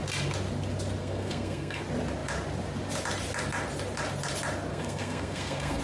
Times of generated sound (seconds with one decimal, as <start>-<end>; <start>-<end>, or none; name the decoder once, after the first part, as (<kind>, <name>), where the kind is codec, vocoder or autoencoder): 1.0-1.8 (codec, SNAC); 4.7-5.8